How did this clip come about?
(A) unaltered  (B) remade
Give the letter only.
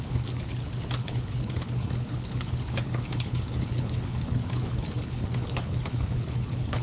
B